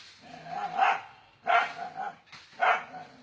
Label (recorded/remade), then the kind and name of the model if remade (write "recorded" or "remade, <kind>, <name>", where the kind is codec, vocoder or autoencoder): recorded